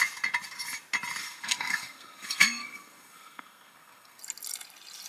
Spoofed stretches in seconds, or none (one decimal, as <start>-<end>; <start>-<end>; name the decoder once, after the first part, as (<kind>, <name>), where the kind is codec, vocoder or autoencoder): 1.2-4.2 (codec, SNAC)